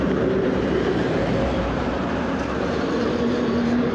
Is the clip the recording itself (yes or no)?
no